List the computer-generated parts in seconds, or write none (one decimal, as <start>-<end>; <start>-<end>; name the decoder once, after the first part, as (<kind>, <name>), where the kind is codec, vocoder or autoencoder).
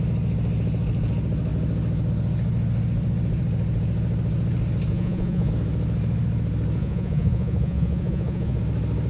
4.9-5.5 (vocoder, Vocos); 6.8-8.6